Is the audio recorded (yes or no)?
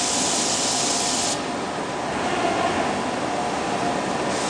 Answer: yes